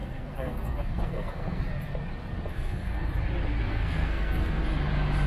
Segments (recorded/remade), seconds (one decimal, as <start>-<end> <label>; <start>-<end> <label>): 0.0-1.6 remade; 1.6-2.5 recorded; 2.5-3.1 remade; 3.1-3.7 recorded; 3.7-4.6 remade; 4.6-5.3 recorded